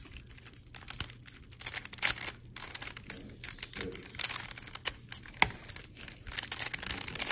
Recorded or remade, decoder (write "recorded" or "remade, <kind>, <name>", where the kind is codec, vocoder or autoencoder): recorded